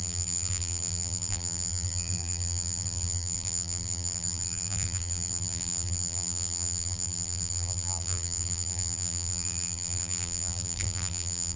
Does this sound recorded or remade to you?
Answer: remade